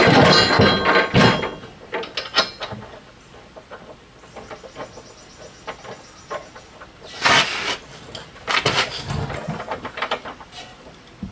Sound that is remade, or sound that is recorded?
recorded